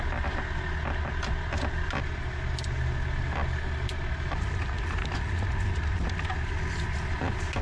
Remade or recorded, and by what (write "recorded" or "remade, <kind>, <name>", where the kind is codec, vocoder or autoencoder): recorded